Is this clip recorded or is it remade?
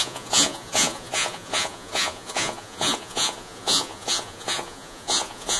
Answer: remade